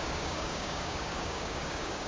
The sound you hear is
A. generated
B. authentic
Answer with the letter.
A